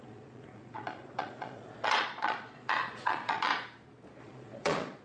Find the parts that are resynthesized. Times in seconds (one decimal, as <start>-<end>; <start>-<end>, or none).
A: 0.0-3.5; 4.2-5.0